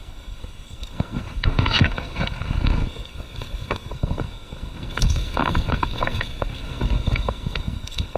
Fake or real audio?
fake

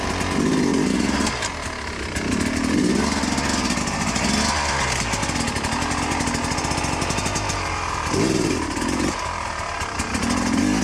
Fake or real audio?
real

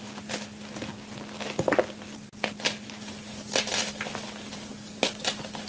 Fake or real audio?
real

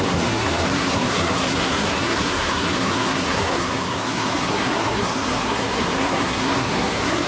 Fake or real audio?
fake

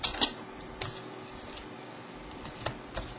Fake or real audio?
real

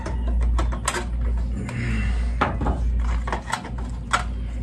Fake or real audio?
real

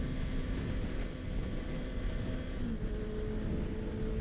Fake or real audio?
real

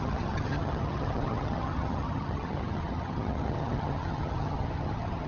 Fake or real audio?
fake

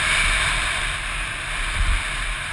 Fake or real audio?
real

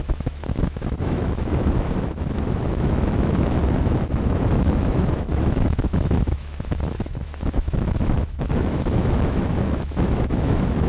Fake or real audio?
fake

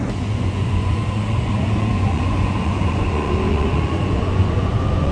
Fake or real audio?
fake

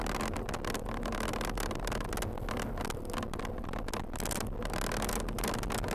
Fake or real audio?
real